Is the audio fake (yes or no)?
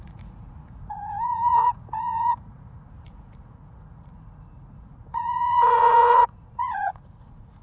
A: yes